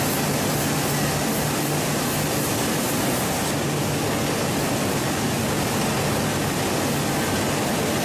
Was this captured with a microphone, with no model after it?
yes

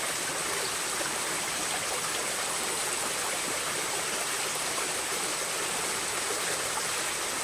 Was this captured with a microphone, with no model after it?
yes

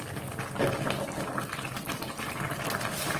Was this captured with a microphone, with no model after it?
yes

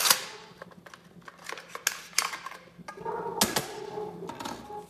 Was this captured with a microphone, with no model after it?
yes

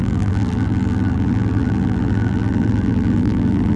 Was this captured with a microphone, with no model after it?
no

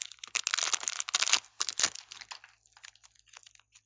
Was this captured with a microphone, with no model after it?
yes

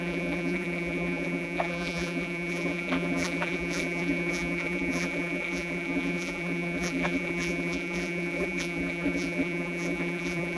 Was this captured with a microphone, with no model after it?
no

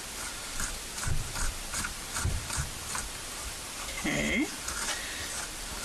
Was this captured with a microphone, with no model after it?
no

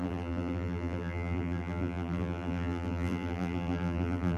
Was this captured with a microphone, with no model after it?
no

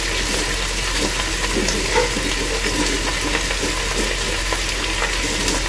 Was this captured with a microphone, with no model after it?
yes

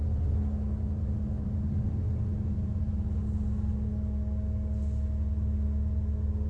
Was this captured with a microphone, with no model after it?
yes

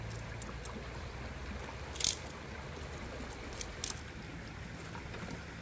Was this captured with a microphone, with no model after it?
yes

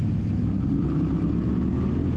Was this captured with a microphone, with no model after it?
yes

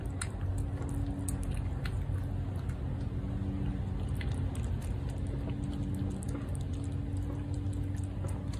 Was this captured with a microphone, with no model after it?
yes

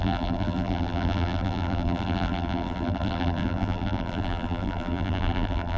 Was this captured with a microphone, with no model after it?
no